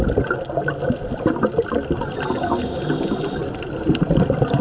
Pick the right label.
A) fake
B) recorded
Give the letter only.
B